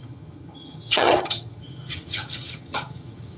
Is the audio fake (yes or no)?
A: yes